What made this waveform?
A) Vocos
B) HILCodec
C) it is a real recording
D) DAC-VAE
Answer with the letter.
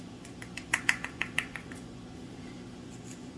A